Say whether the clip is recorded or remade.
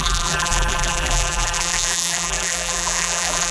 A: remade